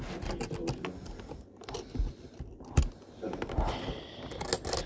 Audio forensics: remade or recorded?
recorded